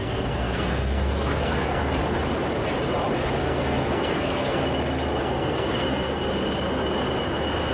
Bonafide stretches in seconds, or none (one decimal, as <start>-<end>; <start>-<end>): 2.0-3.4; 4.6-5.2; 6.2-7.7